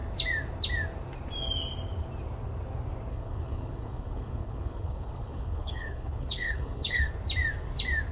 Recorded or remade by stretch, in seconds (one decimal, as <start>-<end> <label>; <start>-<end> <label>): 0.0-3.1 recorded; 3.1-7.1 remade; 7.1-8.1 recorded